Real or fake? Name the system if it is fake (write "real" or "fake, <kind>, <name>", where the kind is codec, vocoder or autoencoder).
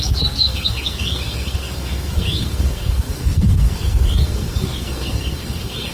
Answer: fake, codec, SNAC